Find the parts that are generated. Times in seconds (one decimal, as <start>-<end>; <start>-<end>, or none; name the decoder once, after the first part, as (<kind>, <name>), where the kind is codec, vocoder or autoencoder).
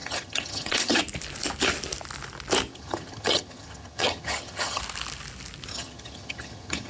0.0-1.0 (vocoder, HiFi-GAN); 2.7-4.8; 5.7-6.9